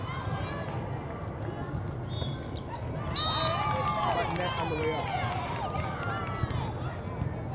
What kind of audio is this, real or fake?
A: real